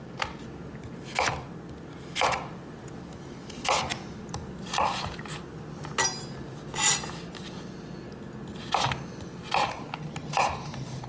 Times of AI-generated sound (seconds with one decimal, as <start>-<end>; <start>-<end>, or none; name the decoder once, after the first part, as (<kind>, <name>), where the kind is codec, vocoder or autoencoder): 3.9-5.1 (vocoder, BigVGAN v2)